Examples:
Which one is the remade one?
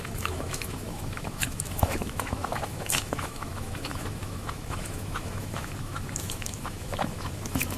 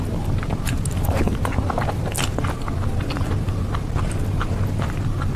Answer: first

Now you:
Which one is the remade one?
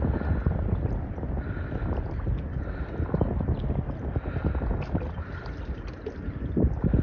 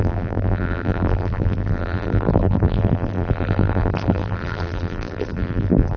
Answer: second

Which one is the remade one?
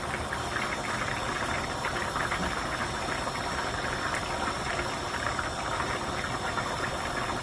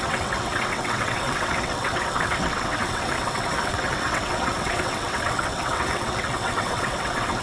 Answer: second